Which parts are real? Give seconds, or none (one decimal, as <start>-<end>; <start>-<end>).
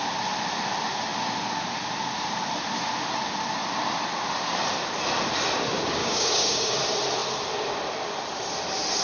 0.0-6.0; 6.7-9.0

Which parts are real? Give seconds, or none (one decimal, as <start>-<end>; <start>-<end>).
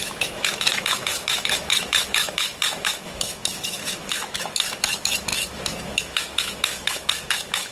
none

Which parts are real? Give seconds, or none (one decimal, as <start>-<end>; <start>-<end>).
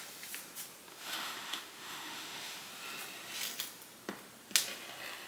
0.0-0.9; 2.7-5.3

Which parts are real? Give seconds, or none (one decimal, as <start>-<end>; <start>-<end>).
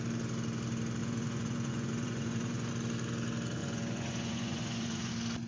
0.0-1.0; 2.7-3.6; 5.1-5.5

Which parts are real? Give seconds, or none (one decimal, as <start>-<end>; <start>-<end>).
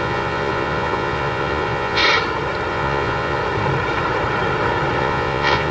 2.0-2.7; 3.4-5.0